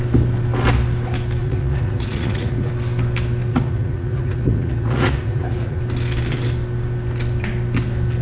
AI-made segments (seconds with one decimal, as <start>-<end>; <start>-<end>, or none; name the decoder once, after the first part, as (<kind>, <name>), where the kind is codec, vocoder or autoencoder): 1.4-2.7 (vocoder, Vocos); 3.5-5.8